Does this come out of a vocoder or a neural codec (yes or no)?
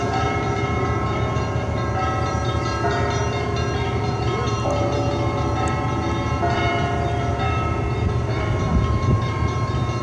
yes